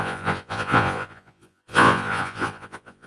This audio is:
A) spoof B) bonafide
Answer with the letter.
A